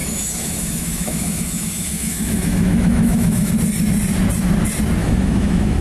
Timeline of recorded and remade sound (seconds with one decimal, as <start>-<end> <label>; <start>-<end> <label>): 0.0-3.5 remade; 3.5-5.0 recorded; 5.0-5.8 remade